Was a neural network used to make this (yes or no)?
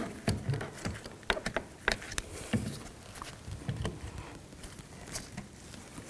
no